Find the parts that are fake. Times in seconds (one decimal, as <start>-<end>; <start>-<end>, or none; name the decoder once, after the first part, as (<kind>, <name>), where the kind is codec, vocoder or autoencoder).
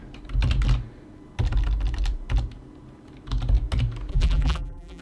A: 4.1-5.0 (vocoder, BigVGAN v2)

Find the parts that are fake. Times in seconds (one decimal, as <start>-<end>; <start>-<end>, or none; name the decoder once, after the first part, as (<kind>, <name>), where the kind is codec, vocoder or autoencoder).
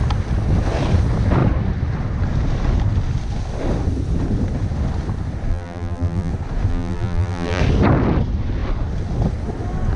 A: 5.5-6.3 (vocoder, BigVGAN v2); 6.7-7.6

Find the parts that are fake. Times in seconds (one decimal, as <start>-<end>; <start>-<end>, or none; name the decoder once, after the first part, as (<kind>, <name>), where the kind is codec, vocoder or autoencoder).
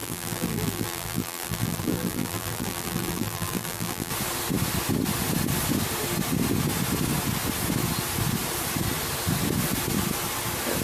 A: 0.0-4.1 (vocoder, BigVGAN v2)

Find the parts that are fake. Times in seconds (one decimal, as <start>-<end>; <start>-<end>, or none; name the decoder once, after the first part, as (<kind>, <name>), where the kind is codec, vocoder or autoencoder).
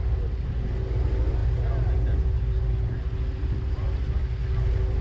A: none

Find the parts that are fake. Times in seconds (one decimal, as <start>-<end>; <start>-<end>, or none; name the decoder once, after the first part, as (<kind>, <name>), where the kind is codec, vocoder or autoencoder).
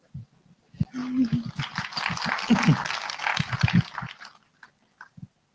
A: 3.3-4.2 (vocoder, BigVGAN v2)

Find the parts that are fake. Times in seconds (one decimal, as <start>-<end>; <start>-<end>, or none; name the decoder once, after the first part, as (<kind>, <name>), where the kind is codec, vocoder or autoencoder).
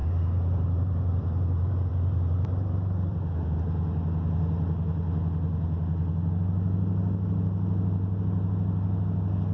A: 0.0-3.6 (vocoder, BigVGAN v2)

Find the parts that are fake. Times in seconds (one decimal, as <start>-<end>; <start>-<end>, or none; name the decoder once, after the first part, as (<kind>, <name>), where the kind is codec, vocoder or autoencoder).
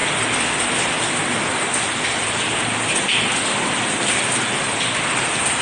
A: none